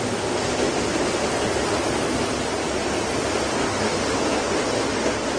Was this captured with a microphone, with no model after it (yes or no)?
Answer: yes